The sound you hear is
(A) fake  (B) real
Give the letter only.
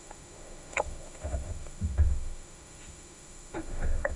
A